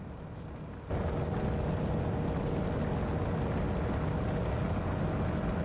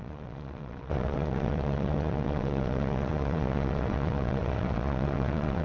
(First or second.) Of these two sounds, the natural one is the first